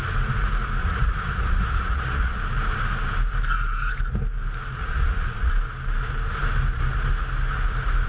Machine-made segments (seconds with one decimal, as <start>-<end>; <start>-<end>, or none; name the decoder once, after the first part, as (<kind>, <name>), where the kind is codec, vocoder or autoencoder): 0.8-2.4 (vocoder, Vocos); 4.8-5.5